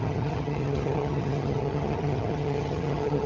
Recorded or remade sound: remade